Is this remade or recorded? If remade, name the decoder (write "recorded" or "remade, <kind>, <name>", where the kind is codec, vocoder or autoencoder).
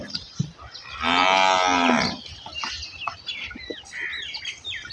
recorded